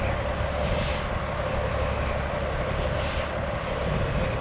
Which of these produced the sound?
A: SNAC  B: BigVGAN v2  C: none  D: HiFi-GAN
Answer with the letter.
C